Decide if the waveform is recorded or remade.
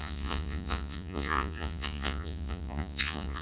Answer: remade